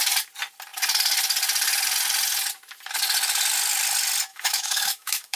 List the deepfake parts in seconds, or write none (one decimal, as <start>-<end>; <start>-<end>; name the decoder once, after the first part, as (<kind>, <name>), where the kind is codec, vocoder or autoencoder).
4.3-5.4 (autoencoder, DAC-VAE)